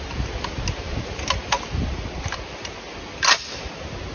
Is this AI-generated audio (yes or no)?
no